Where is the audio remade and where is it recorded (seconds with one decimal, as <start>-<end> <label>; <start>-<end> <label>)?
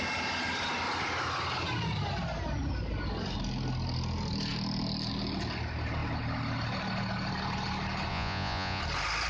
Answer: 0.0-8.1 recorded; 8.1-8.8 remade; 8.8-9.3 recorded